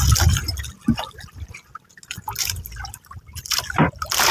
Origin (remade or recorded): recorded